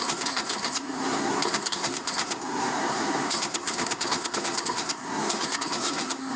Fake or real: fake